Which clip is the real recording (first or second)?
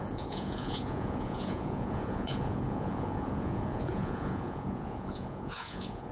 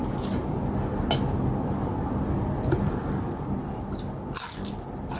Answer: second